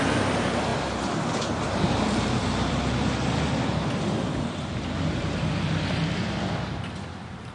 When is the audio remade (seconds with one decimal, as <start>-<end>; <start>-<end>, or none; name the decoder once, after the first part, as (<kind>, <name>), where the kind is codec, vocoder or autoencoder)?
0.0-7.5 (vocoder, BigVGAN v2)